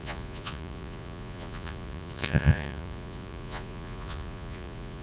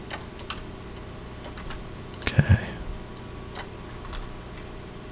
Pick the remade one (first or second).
first